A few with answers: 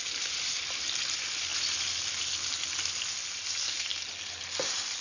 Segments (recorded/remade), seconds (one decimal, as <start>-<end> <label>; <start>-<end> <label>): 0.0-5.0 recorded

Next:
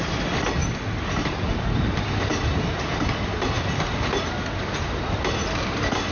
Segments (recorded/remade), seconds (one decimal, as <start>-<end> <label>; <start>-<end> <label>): 0.0-6.1 recorded

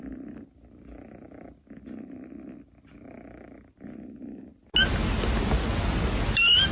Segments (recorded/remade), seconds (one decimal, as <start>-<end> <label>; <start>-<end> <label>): 0.0-6.7 recorded

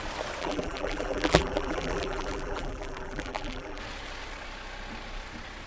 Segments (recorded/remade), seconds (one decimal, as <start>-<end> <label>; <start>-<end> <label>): 0.0-0.4 recorded; 0.4-3.8 remade; 3.8-5.7 recorded

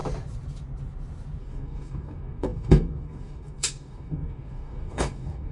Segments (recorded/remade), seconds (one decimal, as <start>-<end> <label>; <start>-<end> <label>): 0.0-1.4 recorded; 1.4-5.5 remade